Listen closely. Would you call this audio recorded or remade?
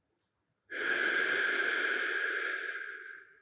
recorded